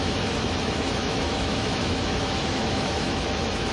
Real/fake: fake